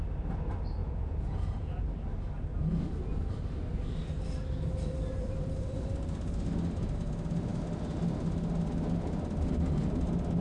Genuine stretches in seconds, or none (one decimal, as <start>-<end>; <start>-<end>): 0.0-0.8; 1.8-10.4